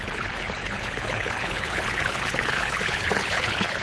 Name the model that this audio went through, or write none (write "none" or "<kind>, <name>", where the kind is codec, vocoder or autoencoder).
codec, HILCodec